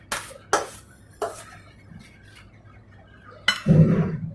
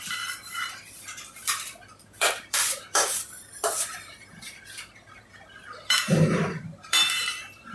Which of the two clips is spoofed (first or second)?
second